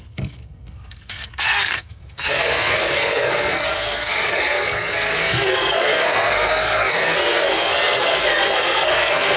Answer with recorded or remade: remade